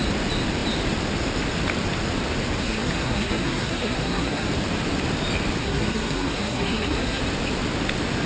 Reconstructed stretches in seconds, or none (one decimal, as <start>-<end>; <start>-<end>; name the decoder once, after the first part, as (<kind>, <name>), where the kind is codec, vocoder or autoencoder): 2.6-4.5 (codec, SNAC); 5.6-7.2